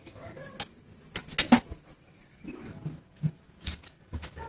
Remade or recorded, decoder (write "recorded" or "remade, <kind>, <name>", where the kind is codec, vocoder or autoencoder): recorded